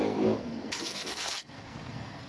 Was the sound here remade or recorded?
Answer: remade